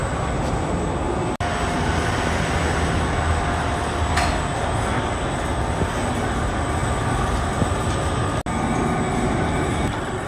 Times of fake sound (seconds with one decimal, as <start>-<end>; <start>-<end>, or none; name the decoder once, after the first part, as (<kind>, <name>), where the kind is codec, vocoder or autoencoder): none

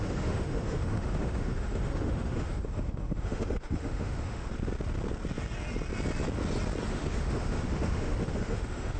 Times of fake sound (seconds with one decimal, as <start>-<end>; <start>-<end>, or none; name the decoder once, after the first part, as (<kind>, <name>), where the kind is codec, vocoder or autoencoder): 0.0-4.5 (autoencoder, DAC-VAE); 6.9-9.0